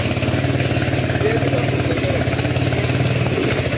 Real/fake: real